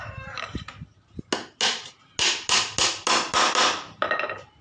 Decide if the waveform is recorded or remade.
recorded